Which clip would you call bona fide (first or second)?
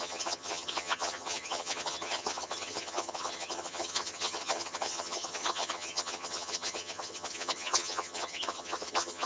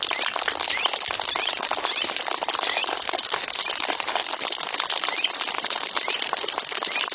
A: second